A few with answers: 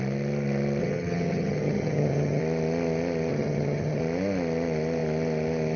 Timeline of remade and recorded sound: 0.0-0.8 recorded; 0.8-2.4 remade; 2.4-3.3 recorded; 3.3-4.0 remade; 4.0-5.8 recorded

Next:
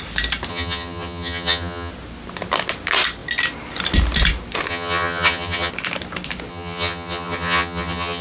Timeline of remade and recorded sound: 0.0-0.5 recorded; 0.5-1.9 remade; 1.9-4.7 recorded; 4.7-5.7 remade; 5.7-6.5 recorded; 6.5-8.2 remade

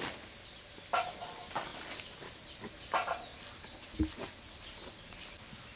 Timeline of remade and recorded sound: 0.0-5.8 recorded

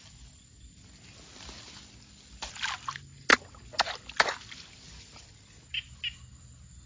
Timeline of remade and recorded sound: 0.0-6.9 recorded

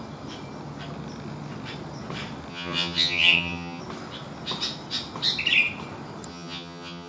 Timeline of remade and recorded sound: 0.0-2.5 recorded; 2.5-3.8 remade; 3.8-6.3 recorded; 6.3-7.1 remade